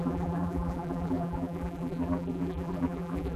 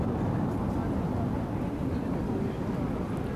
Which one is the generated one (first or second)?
first